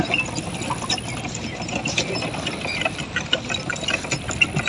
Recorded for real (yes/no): yes